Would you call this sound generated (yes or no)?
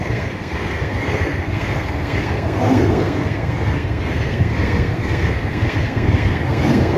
yes